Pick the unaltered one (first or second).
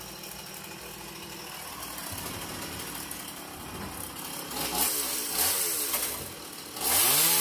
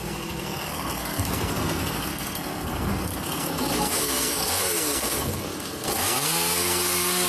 first